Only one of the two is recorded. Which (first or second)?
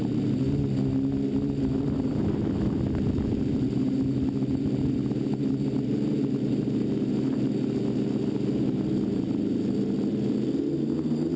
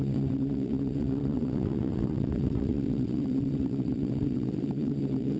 first